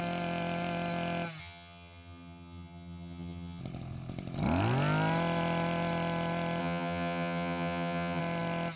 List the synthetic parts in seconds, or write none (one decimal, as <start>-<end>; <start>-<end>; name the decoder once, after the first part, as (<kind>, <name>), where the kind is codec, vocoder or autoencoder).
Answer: 1.4-3.6 (vocoder, HiFi-GAN); 6.6-8.2